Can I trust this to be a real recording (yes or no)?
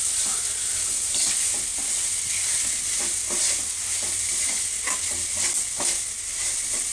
yes